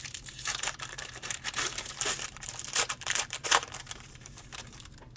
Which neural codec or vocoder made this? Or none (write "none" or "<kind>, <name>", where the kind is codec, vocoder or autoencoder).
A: vocoder, BigVGAN v2